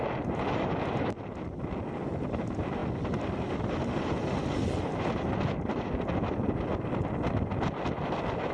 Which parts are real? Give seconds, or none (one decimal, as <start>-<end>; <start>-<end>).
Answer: 0.0-8.5